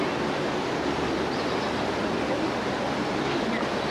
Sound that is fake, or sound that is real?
real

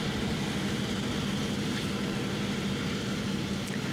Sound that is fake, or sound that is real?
real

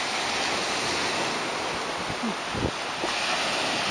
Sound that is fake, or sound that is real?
real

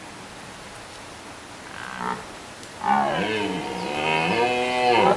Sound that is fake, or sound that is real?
real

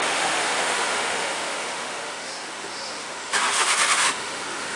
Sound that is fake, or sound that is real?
fake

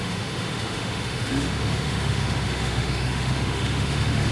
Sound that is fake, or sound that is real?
fake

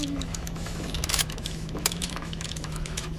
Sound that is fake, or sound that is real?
fake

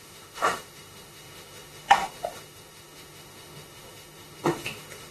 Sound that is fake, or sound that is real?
fake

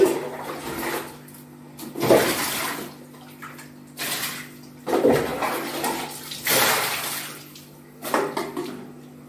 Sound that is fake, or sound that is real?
real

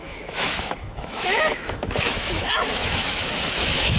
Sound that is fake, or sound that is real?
fake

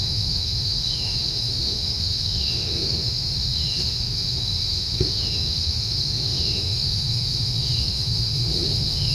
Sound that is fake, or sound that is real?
fake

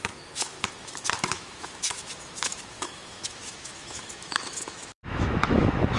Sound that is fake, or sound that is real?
fake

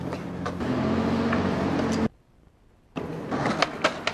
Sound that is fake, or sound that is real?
real